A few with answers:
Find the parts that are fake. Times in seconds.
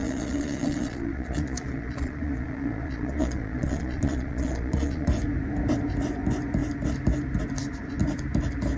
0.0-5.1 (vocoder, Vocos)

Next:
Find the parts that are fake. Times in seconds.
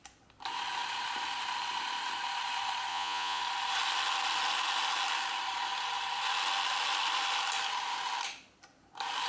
2.9-3.4 (vocoder, Vocos)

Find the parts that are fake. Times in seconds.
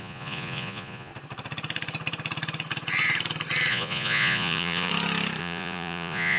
0.0-1.1 (vocoder, Vocos); 3.7-4.9; 5.4-6.4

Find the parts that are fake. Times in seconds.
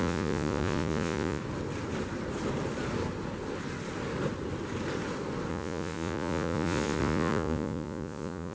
0.0-1.4 (vocoder, Vocos); 5.5-8.5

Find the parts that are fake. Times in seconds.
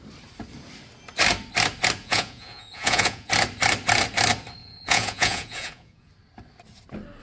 2.0-3.3 (vocoder, Vocos); 4.6-6.1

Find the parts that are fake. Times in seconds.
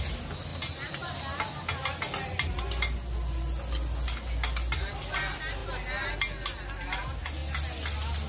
none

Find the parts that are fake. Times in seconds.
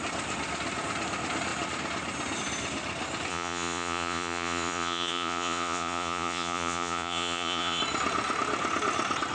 3.3-7.8 (vocoder, Vocos)